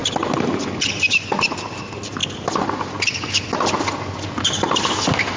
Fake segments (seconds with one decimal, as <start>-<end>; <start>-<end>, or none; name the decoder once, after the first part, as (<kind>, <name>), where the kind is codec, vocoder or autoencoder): none